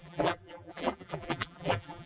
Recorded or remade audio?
remade